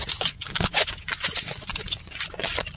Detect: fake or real fake